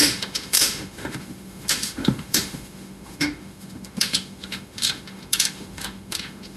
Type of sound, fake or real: fake